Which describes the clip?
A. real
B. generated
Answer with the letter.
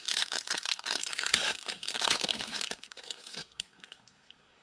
B